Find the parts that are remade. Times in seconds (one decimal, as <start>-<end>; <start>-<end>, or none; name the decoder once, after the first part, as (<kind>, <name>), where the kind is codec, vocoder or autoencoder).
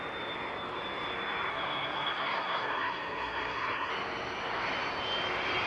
1.5-3.9 (codec, SNAC)